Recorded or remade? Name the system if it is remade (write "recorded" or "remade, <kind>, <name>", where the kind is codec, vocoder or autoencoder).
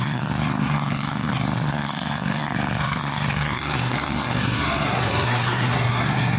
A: remade, codec, SNAC